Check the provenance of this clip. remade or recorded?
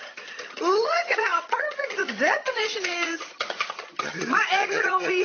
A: remade